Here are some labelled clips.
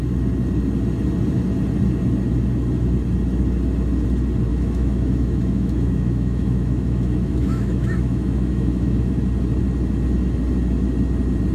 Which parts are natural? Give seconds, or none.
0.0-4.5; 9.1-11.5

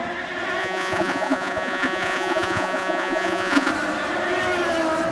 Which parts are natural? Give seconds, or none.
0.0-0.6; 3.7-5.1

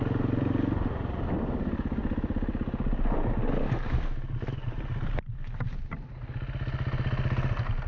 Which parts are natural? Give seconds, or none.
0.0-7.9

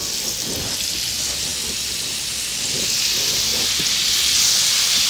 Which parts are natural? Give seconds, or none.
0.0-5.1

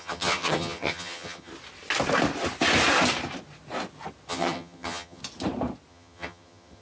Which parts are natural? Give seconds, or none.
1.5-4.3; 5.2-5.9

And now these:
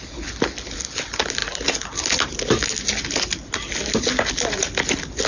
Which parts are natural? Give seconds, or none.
0.0-5.3

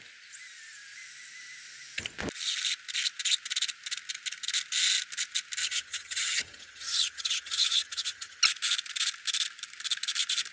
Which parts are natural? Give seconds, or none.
0.0-5.6; 8.4-10.5